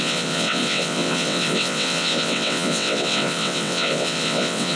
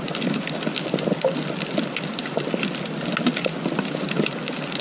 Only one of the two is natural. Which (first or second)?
second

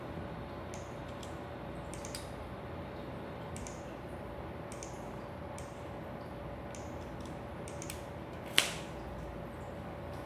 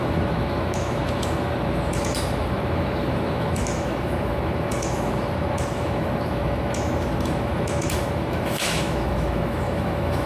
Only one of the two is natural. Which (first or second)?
first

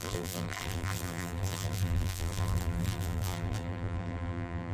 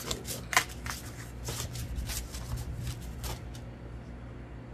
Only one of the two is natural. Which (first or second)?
second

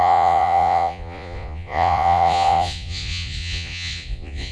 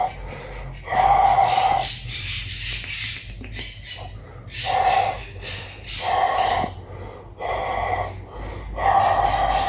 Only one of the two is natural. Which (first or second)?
second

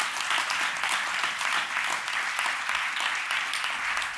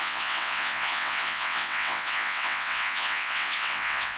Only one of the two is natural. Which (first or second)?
first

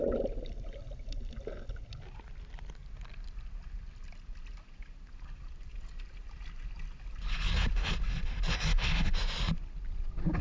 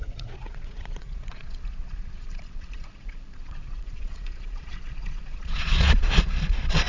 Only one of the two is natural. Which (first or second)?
first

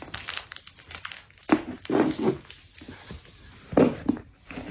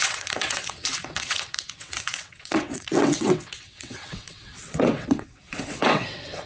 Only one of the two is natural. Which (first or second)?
first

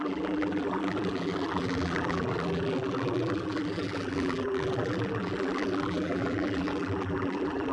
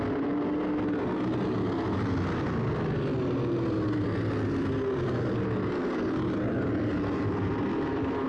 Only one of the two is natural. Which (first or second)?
second